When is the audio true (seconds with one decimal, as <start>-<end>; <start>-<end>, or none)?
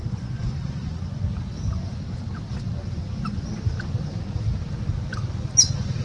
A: 1.2-2.8; 3.4-6.0